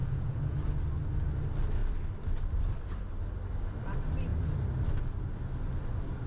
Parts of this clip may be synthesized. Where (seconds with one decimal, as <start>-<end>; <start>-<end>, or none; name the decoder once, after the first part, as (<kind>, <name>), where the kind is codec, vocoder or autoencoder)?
0.0-0.6 (vocoder, Vocos)